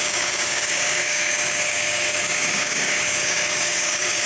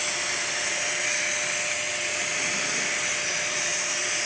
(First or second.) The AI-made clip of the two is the first